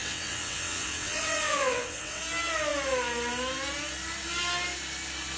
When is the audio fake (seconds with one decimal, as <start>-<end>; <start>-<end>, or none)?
0.0-2.2